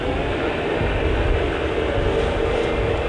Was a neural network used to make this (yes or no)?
no